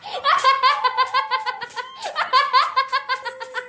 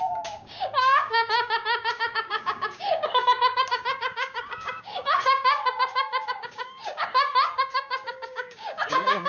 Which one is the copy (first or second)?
second